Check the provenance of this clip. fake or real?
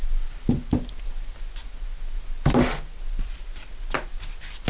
real